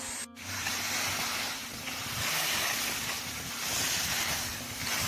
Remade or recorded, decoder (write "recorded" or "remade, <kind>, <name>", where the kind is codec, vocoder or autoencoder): recorded